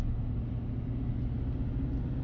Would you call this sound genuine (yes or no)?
yes